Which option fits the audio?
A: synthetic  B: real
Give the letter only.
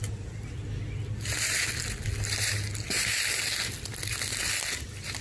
B